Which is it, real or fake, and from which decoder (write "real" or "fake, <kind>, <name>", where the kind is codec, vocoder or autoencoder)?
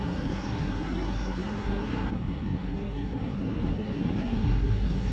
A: fake, codec, SNAC